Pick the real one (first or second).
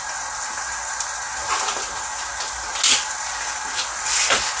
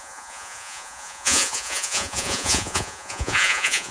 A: first